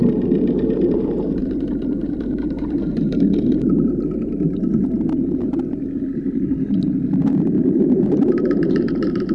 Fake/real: fake